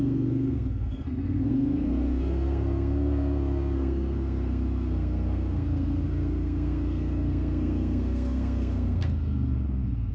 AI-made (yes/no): yes